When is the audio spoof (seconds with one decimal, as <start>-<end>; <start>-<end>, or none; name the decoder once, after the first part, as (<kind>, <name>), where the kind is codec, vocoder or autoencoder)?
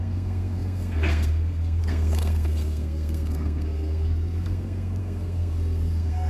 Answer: 0.0-6.3 (codec, SNAC)